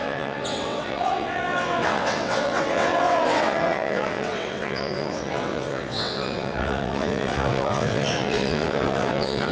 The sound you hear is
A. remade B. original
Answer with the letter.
A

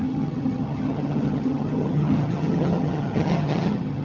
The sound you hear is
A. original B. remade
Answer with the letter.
B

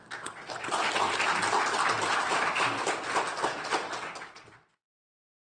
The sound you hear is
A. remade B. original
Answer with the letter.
B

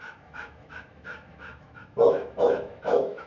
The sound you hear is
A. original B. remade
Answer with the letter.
B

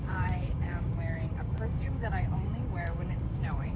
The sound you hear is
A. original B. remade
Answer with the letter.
B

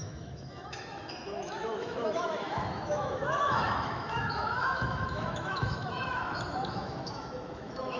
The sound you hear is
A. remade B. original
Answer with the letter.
A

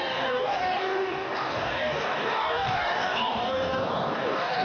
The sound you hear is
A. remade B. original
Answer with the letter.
A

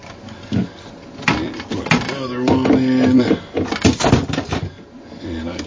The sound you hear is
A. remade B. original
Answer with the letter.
B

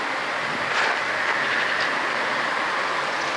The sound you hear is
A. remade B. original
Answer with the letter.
B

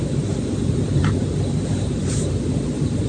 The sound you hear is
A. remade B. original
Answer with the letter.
B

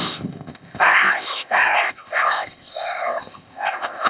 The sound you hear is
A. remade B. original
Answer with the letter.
A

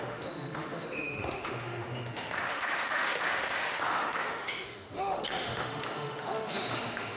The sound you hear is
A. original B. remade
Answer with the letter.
B